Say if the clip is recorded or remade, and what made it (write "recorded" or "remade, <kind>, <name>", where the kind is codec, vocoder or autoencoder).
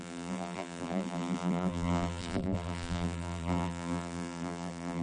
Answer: remade, vocoder, BigVGAN v2